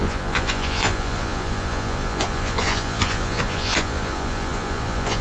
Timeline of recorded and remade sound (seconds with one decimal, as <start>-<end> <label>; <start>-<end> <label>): 0.0-5.2 remade

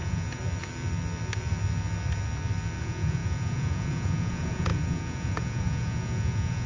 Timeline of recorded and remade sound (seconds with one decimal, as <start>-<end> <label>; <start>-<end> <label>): 0.0-0.4 remade; 0.4-2.8 recorded; 2.8-6.7 remade

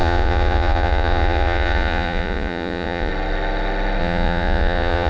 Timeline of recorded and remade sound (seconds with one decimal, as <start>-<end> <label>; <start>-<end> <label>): 0.0-3.1 remade; 3.1-4.0 recorded; 4.0-5.1 remade

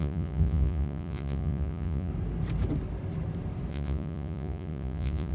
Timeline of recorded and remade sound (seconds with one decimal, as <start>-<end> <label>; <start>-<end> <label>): 0.0-2.1 remade; 2.1-3.7 recorded; 3.7-5.3 remade

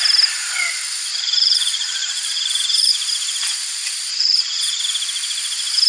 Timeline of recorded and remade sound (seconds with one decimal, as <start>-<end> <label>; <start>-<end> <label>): 0.0-1.1 recorded; 1.1-2.9 remade; 2.9-4.1 recorded; 4.1-4.8 remade; 4.8-5.9 recorded

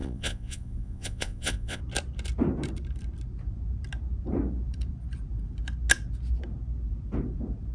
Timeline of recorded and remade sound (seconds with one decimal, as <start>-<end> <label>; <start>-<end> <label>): 0.0-1.8 remade; 1.8-7.7 recorded